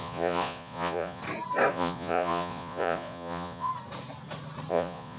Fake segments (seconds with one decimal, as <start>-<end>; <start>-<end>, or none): 0.0-1.2; 1.7-3.7; 4.7-5.2